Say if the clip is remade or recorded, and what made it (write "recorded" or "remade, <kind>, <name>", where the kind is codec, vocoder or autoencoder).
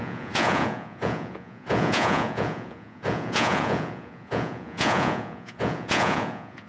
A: remade, vocoder, Vocos